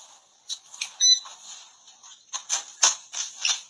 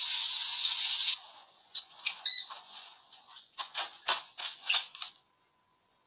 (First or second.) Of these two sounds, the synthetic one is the second